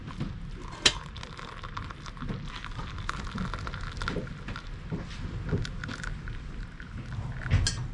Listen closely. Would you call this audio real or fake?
real